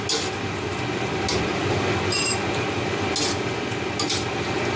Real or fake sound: real